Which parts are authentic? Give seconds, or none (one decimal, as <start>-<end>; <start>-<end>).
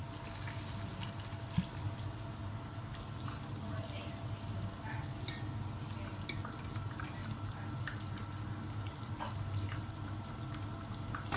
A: 0.0-11.4